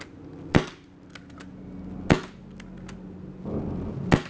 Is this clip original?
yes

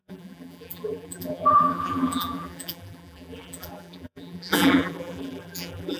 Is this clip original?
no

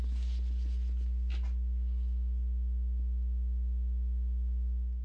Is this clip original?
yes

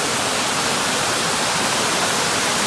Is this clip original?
yes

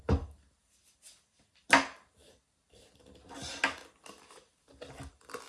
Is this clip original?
yes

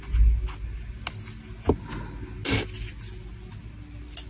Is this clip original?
yes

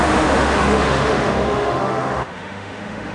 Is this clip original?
no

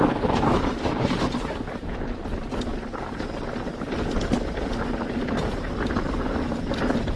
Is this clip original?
yes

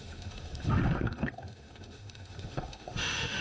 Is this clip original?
no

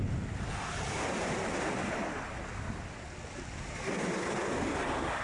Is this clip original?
yes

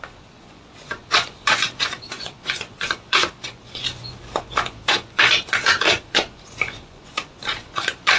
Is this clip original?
no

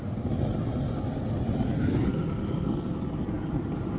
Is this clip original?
yes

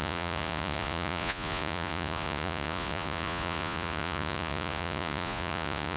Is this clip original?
no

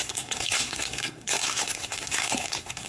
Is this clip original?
no